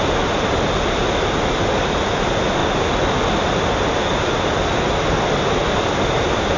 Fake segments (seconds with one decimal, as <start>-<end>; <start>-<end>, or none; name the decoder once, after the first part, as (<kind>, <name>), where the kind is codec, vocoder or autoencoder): none